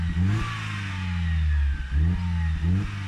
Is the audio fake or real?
real